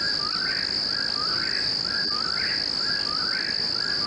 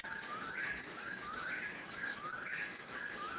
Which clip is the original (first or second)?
first